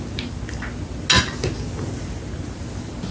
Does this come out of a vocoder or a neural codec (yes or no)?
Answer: no